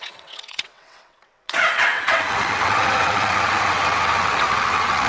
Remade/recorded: remade